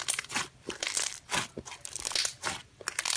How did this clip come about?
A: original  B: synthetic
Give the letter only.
B